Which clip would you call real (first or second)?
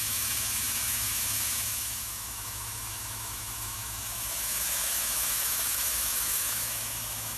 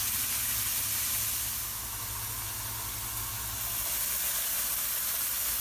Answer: second